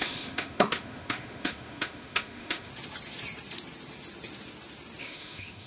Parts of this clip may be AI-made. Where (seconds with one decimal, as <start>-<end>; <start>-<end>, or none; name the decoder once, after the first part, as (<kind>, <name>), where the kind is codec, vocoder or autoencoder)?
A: 0.0-2.7 (autoencoder, DAC-VAE); 5.0-5.7